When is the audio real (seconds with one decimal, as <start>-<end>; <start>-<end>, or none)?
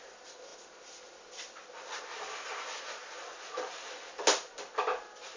0.0-5.4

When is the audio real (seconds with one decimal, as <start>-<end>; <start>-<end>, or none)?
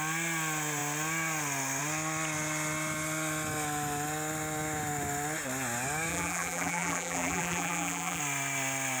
0.0-6.1; 8.2-9.0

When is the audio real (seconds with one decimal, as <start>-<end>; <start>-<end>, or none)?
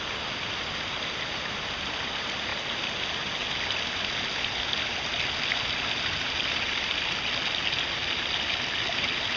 0.0-9.4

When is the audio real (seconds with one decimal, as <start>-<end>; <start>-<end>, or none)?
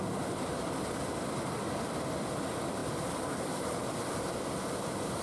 0.0-2.8; 3.8-5.2